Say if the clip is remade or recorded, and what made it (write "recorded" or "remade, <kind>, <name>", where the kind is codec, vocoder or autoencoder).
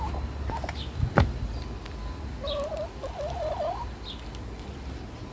recorded